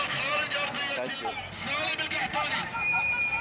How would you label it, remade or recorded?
remade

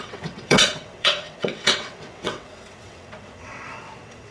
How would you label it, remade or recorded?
remade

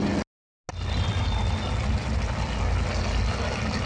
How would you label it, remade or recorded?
recorded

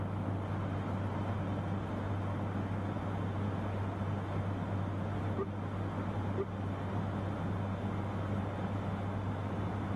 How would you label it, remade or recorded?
recorded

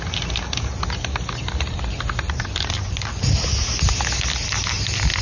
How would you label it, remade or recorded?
recorded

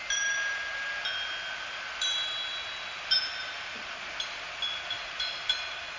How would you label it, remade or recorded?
recorded